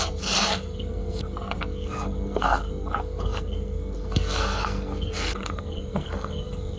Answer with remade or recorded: remade